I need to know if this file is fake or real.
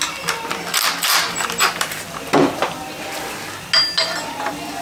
real